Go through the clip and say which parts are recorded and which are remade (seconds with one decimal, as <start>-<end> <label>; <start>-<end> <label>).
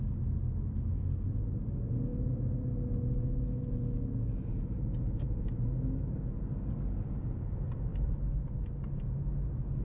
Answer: 0.0-9.8 recorded